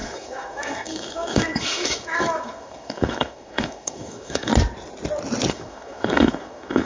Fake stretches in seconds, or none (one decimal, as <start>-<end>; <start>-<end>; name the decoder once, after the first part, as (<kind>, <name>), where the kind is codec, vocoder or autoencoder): 0.0-4.5 (autoencoder, DAC-VAE); 5.5-6.9